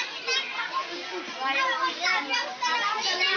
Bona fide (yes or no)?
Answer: yes